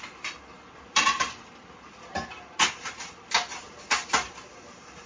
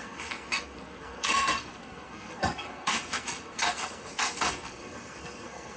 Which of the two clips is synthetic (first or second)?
second